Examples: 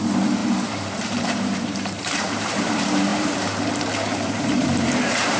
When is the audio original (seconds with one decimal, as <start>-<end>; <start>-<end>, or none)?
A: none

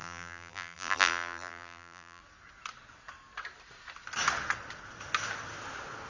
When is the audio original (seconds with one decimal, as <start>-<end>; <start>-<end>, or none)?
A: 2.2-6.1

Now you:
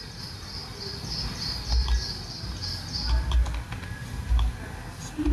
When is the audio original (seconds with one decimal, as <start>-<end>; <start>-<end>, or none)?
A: 0.0-0.6; 1.7-5.3

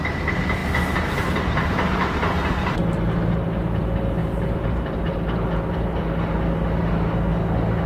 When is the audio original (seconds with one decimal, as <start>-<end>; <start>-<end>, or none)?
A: 0.0-4.2; 5.0-7.9

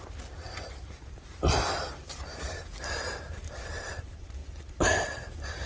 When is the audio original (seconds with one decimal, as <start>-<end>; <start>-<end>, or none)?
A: 4.4-5.0

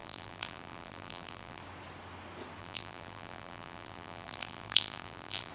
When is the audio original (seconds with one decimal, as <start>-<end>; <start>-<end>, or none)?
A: 1.6-2.6